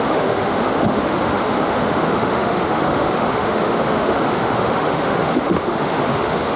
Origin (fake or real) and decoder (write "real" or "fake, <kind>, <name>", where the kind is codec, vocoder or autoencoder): fake, autoencoder, DAC-VAE